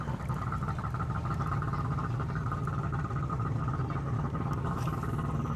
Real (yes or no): no